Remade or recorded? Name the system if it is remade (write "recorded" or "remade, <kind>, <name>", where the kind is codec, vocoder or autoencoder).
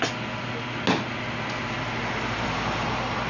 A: recorded